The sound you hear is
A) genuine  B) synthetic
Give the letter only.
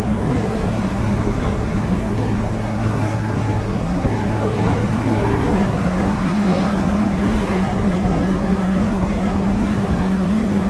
B